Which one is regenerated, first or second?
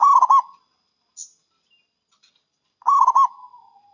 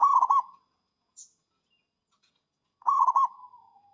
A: second